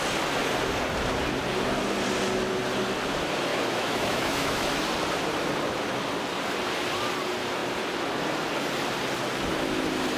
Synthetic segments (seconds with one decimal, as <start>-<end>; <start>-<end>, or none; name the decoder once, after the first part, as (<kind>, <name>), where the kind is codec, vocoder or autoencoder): 3.5-4.8 (autoencoder, DAC-VAE)